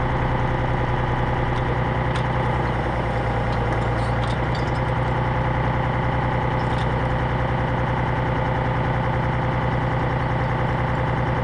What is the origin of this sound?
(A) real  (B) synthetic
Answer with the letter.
A